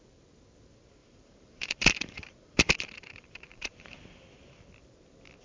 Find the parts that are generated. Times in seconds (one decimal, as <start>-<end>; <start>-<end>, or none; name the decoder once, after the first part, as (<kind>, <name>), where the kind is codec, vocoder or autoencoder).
1.0-4.2 (vocoder, BigVGAN v2)